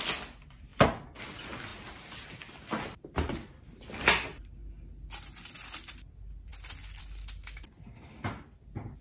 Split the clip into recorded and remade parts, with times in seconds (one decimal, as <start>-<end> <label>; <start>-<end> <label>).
0.0-1.7 recorded; 1.7-2.3 remade; 2.3-9.0 recorded